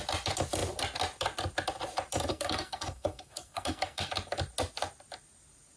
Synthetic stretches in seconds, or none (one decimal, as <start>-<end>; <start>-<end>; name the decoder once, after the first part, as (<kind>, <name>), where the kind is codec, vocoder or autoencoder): 2.3-4.1 (codec, SNAC)